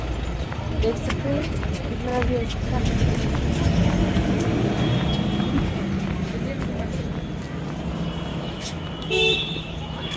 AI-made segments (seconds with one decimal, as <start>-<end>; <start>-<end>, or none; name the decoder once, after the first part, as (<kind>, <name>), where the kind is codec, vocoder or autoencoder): 8.3-10.2 (autoencoder, DAC-VAE)